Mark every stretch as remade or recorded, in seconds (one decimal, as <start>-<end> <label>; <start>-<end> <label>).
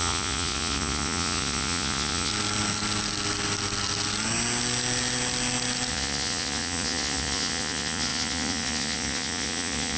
0.0-2.3 remade; 2.3-5.9 recorded; 5.9-10.0 remade